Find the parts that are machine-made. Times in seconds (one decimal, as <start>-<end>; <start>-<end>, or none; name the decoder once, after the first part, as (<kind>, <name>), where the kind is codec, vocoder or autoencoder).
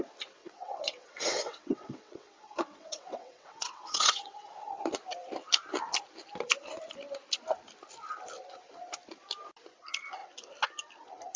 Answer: 0.4-4.7 (vocoder, WaveNeXt)